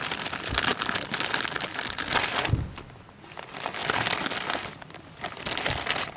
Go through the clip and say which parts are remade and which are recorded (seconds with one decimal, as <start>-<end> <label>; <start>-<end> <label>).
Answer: 0.0-6.2 recorded